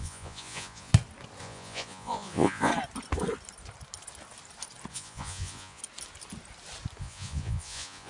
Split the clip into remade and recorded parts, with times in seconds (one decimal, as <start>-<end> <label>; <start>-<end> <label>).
0.0-0.9 remade; 0.9-1.4 recorded; 1.4-2.7 remade; 2.7-4.9 recorded; 4.9-5.8 remade; 5.8-7.0 recorded; 7.0-8.1 remade